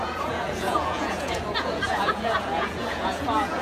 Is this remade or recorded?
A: remade